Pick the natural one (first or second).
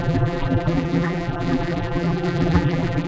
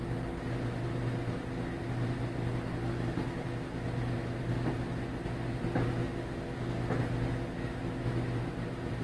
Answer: second